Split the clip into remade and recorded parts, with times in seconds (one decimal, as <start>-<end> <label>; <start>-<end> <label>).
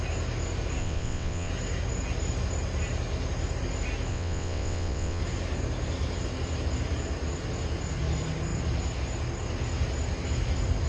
0.0-0.8 recorded; 0.8-1.5 remade; 1.5-4.1 recorded; 4.1-5.2 remade; 5.2-10.9 recorded